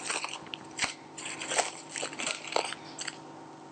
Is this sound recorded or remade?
recorded